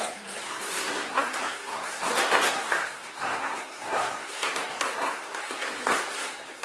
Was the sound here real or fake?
fake